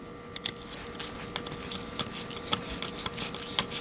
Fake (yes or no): no